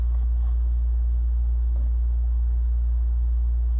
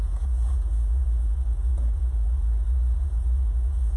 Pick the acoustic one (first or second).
first